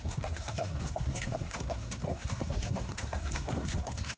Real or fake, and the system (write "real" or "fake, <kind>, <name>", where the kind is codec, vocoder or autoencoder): fake, codec, SNAC